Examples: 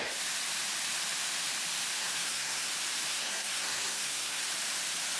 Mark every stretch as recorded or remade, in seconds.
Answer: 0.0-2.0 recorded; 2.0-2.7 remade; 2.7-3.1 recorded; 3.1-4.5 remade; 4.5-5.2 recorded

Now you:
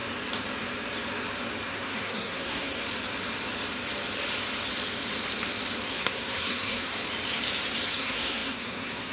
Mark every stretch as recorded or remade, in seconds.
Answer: 0.0-1.7 recorded; 1.7-2.8 remade; 2.8-5.9 recorded; 5.9-6.9 remade; 6.9-7.9 recorded; 7.9-9.1 remade

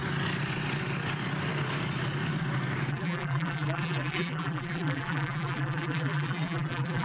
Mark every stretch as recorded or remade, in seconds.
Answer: 0.0-2.9 recorded; 2.9-7.0 remade

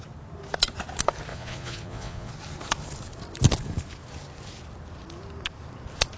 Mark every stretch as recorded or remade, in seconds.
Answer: 0.0-1.3 recorded; 1.3-2.3 remade; 2.3-6.2 recorded

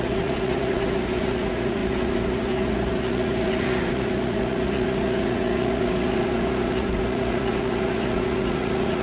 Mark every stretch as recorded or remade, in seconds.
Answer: 0.0-9.0 remade

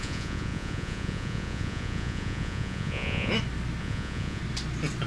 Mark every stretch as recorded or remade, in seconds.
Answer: 0.0-3.3 remade; 3.3-3.8 recorded; 3.8-4.4 remade; 4.4-5.1 recorded

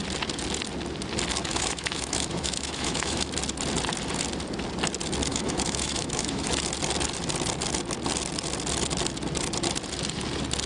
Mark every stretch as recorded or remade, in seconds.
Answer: 0.0-1.4 recorded; 1.4-3.3 remade; 3.3-5.3 recorded; 5.3-6.5 remade; 6.5-10.7 recorded